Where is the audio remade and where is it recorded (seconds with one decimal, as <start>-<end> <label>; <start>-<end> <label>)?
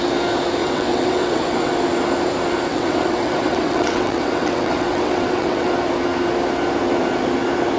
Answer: 0.0-0.6 recorded; 0.6-1.7 remade; 1.7-2.7 recorded; 2.7-5.7 remade; 5.7-7.8 recorded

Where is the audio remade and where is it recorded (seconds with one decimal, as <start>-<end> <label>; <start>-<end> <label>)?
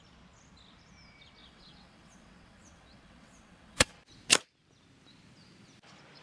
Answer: 0.0-1.4 recorded; 1.4-3.9 remade; 3.9-6.2 recorded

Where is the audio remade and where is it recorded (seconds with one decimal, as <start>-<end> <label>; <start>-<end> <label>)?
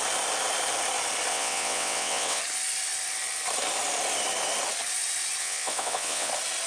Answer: 0.0-1.3 recorded; 1.3-2.4 remade; 2.4-5.4 recorded; 5.4-6.3 remade; 6.3-6.7 recorded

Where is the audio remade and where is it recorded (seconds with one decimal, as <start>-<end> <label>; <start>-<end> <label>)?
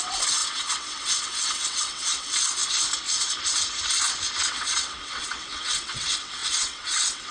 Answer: 0.0-2.6 remade; 2.6-4.5 recorded; 4.5-7.3 remade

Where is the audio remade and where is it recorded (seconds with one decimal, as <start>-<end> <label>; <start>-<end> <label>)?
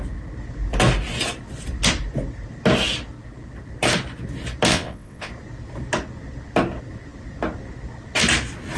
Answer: 0.0-4.7 recorded; 4.7-5.3 remade; 5.3-8.8 recorded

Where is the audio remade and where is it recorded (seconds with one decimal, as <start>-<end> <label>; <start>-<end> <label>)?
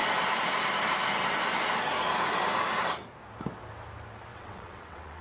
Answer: 0.0-4.3 recorded; 4.3-5.2 remade